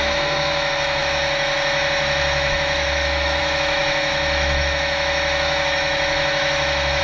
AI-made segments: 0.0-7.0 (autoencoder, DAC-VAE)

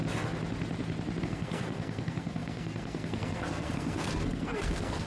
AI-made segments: 1.2-5.1 (codec, SNAC)

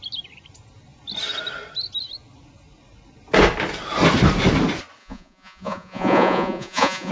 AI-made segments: 5.0-7.1 (vocoder, Vocos)